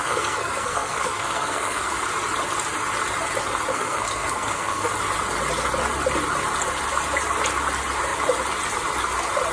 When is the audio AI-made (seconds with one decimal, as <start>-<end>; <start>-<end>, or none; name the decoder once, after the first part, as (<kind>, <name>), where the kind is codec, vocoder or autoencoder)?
0.0-1.9 (codec, SNAC); 3.7-4.9

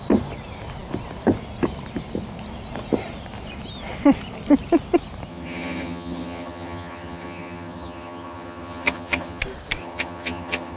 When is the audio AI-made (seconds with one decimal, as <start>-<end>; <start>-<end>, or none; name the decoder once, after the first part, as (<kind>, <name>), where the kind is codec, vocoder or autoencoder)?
5.3-9.4 (vocoder, HiFi-GAN); 9.8-10.8

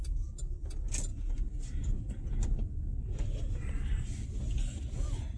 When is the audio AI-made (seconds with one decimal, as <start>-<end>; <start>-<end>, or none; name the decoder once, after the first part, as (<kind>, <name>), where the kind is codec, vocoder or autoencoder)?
none

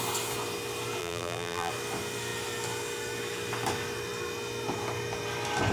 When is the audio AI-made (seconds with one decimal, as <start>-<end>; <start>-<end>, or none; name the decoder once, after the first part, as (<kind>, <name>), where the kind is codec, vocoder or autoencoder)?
1.0-1.7 (vocoder, BigVGAN v2)

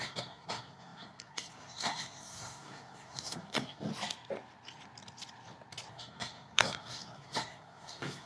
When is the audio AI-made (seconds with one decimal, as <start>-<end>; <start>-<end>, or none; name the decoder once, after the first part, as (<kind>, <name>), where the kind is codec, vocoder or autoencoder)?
0.0-3.9 (codec, SNAC); 5.9-8.3